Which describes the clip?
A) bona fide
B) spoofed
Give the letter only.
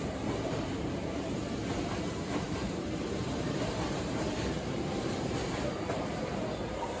B